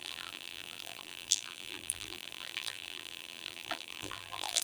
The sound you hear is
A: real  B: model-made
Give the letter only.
B